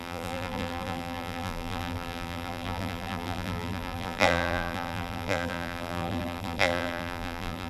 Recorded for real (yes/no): no